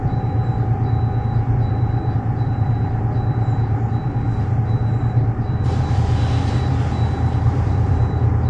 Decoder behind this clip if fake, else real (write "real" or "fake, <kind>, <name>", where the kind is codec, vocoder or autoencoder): fake, vocoder, BigVGAN v2